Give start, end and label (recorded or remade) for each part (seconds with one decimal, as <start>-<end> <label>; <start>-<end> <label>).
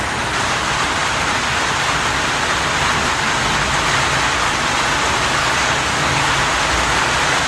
0.0-5.4 recorded; 5.4-6.2 remade; 6.2-7.5 recorded